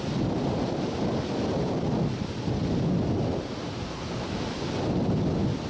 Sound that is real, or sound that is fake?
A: real